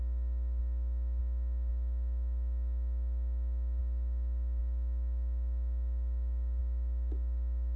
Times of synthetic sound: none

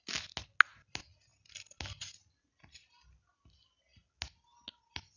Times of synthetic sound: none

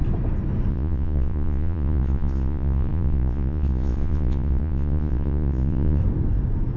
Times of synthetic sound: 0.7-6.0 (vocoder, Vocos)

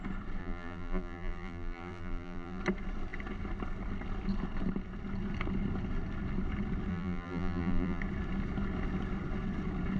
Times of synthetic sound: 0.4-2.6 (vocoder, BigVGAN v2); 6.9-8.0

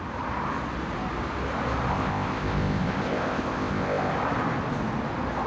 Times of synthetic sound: 1.9-4.1 (codec, ZipCodec)

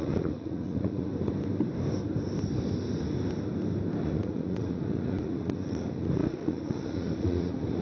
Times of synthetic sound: 0.0-1.1 (vocoder, Vocos); 4.0-7.8

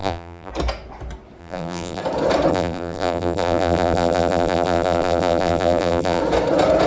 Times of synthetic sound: 0.0-0.5 (vocoder, BigVGAN v2); 1.4-2.0; 2.5-6.2